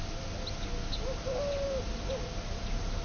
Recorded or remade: recorded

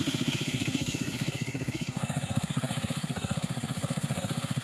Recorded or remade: remade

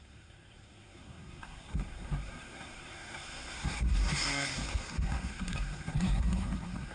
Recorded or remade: remade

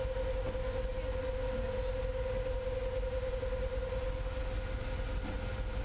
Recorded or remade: recorded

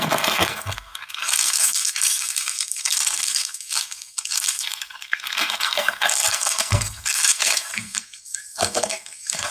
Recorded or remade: remade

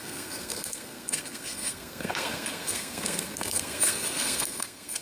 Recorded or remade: remade